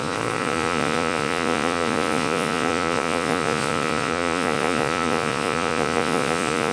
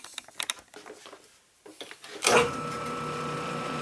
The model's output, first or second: first